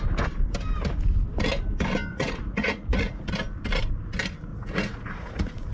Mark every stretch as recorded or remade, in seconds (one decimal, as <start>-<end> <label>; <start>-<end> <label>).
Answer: 0.0-2.1 recorded; 2.1-3.3 remade; 3.3-4.5 recorded; 4.5-5.7 remade